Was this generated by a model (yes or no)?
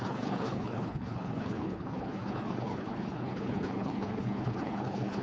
yes